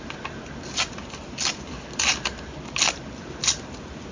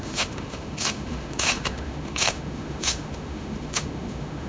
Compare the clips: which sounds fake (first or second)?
second